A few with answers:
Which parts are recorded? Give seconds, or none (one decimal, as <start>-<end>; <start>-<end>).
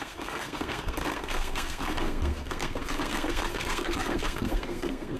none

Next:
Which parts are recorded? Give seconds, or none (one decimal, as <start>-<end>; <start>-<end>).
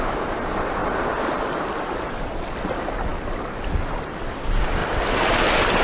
0.0-5.8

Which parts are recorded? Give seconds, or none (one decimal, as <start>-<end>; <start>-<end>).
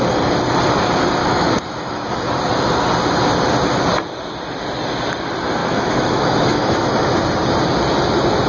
0.0-1.2; 2.1-5.6; 6.9-8.5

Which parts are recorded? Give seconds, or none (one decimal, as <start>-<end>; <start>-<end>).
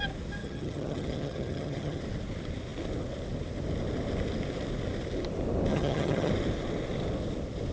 0.0-0.4; 2.0-5.7; 6.3-7.7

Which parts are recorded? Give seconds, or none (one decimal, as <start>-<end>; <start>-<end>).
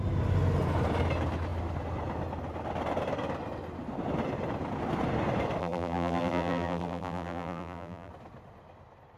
0.0-5.6; 8.1-9.2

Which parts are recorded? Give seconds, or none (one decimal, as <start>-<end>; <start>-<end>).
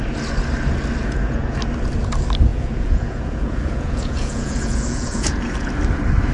0.0-1.0; 1.6-2.5; 5.7-6.3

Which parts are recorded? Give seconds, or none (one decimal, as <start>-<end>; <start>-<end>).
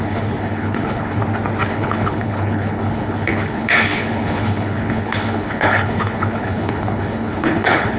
1.2-1.7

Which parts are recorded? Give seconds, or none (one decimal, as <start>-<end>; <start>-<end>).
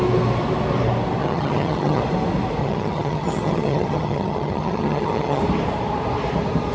0.0-1.2; 2.0-2.6; 5.4-6.7